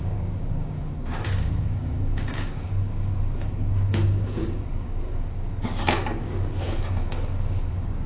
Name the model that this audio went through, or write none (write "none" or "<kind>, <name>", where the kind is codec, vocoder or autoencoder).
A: codec, DAC